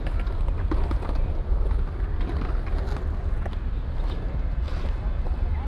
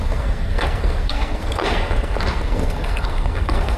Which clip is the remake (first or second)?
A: second